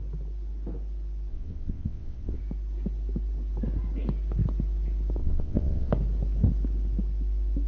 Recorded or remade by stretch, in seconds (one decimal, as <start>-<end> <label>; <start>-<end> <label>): 0.0-1.3 recorded; 1.3-2.4 remade; 2.4-5.2 recorded; 5.2-5.9 remade; 5.9-7.7 recorded